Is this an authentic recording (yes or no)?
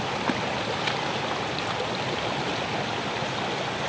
yes